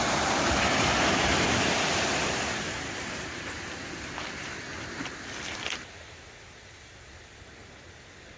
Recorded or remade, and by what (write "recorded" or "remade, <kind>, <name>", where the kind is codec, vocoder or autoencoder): recorded